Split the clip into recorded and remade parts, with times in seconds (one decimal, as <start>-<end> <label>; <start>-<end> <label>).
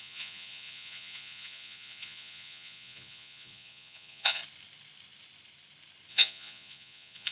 0.0-4.4 remade; 4.4-6.1 recorded; 6.1-7.3 remade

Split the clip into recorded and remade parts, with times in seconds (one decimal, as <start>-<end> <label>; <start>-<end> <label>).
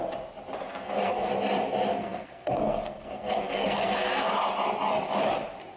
0.0-0.7 recorded; 0.7-1.3 remade; 1.3-2.0 recorded; 2.0-4.3 remade; 4.3-5.8 recorded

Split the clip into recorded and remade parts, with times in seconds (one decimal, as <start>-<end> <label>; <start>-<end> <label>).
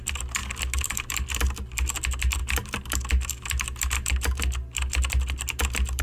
0.0-6.0 recorded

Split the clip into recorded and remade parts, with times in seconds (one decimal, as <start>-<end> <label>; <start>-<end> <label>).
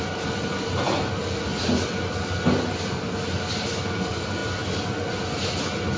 0.0-6.0 recorded